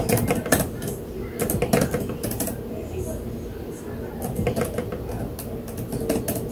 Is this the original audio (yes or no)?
yes